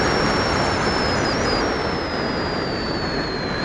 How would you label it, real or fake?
real